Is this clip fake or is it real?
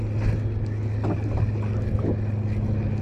real